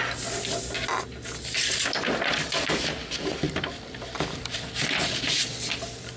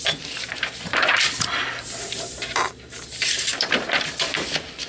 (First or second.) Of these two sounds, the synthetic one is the second